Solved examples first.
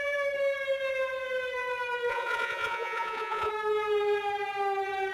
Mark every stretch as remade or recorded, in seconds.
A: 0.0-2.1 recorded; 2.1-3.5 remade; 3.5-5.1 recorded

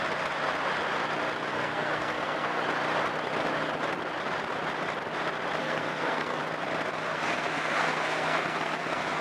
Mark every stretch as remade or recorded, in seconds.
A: 0.0-1.5 recorded; 1.5-2.6 remade; 2.6-5.6 recorded; 5.6-6.4 remade; 6.4-7.1 recorded; 7.1-9.2 remade

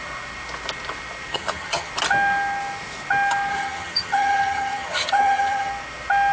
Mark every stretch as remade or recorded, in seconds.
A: 0.0-1.3 recorded; 1.3-1.9 remade; 1.9-3.5 recorded; 3.5-5.7 remade; 5.7-6.3 recorded